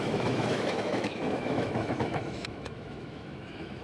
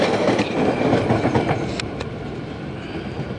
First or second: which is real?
second